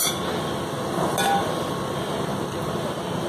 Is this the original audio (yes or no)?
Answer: yes